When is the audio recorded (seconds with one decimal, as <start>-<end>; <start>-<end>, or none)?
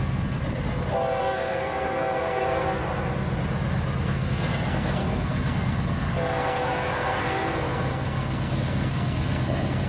0.4-1.2; 2.8-4.0